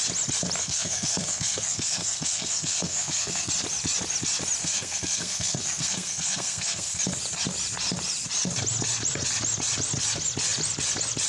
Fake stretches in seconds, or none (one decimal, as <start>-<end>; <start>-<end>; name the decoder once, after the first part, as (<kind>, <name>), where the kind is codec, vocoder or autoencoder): 0.6-3.5 (codec, SNAC); 4.6-7.0